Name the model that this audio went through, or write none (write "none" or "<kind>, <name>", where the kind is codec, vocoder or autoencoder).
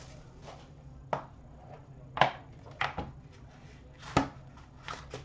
none